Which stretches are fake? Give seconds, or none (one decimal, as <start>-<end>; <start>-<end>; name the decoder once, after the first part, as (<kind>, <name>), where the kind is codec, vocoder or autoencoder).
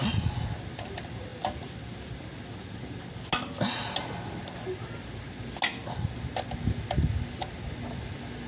none